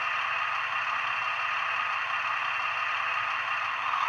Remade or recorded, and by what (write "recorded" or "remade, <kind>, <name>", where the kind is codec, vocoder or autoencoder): recorded